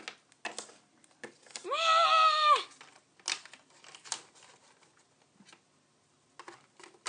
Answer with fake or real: real